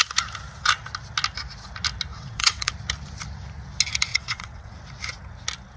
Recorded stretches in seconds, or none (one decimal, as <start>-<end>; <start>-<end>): 0.0-2.1; 2.7-4.1; 4.7-5.8